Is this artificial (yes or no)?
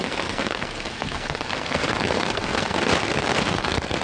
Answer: yes